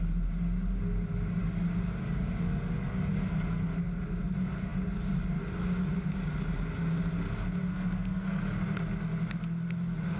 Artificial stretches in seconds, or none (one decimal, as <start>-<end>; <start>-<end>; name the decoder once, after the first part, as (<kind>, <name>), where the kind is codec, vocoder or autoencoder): 7.7-8.4 (codec, SNAC)